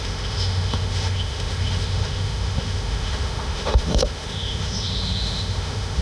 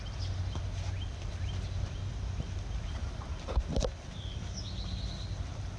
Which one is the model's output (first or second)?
first